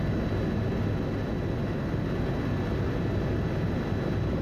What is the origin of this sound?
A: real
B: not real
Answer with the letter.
A